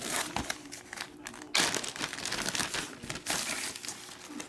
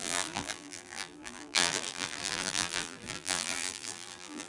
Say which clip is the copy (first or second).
second